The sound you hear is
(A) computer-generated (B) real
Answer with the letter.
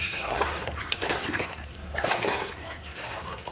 A